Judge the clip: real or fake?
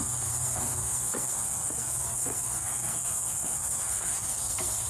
fake